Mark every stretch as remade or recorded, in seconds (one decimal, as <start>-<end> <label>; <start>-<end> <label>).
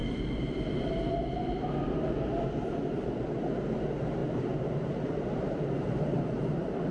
0.0-4.2 recorded; 4.2-6.3 remade; 6.3-6.9 recorded